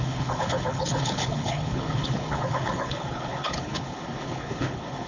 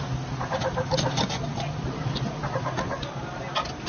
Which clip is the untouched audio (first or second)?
second